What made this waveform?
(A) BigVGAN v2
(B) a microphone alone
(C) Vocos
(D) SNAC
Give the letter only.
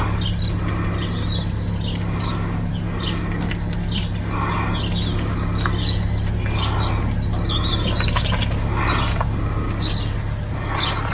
B